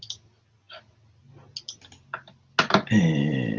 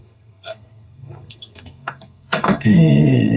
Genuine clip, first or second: first